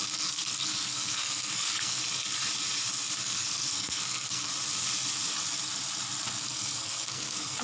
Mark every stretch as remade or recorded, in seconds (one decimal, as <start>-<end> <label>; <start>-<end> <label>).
0.0-2.0 remade; 2.0-3.2 recorded; 3.2-4.5 remade; 4.5-6.4 recorded; 6.4-7.6 remade